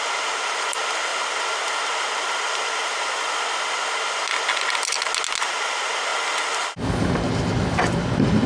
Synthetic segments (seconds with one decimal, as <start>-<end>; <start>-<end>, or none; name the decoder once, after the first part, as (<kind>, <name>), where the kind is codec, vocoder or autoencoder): 0.0-1.1 (vocoder, BigVGAN v2); 2.1-2.9; 5.4-6.1; 7.8-8.5